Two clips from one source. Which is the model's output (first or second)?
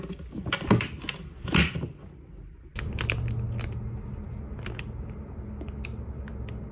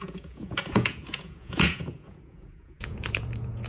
second